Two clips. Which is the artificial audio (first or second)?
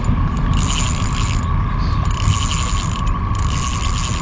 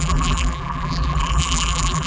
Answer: second